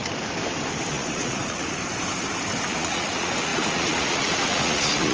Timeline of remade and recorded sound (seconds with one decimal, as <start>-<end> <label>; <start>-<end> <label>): 0.0-0.9 recorded; 0.9-1.8 remade; 1.8-2.7 recorded; 2.7-5.1 remade